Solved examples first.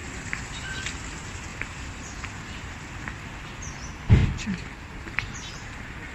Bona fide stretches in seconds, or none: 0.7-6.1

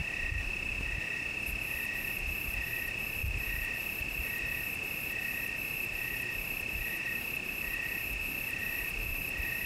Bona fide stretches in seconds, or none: 0.0-3.2; 6.8-8.6

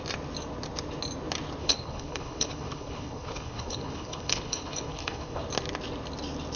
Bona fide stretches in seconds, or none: 0.0-1.6; 5.4-6.6

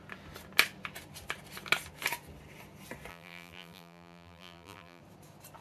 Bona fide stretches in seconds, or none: 0.0-3.1; 5.0-5.6